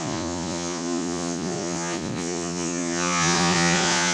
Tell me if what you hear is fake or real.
fake